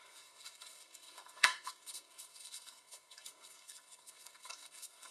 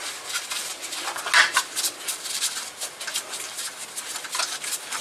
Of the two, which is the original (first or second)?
second